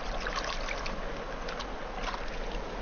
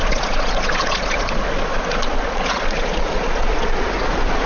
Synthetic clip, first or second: second